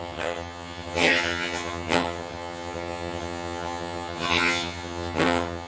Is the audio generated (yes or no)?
yes